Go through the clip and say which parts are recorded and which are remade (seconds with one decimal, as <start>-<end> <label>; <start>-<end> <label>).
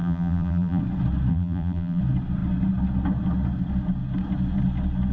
0.0-0.8 remade; 0.8-1.3 recorded; 1.3-2.0 remade; 2.0-5.1 recorded